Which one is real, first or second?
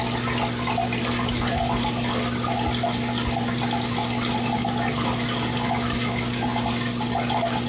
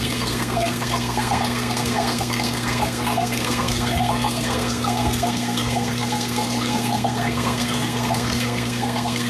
first